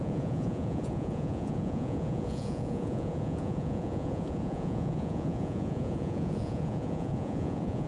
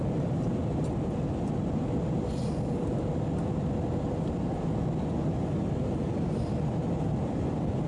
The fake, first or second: first